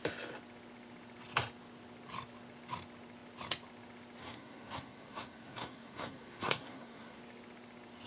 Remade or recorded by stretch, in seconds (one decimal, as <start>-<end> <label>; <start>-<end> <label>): 0.0-4.2 recorded; 4.2-7.2 remade; 7.2-8.1 recorded

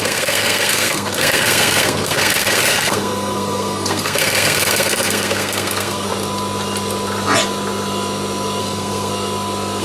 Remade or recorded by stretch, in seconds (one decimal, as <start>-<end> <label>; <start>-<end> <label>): 0.0-6.1 remade; 6.1-8.6 recorded; 8.6-9.1 remade; 9.1-9.8 recorded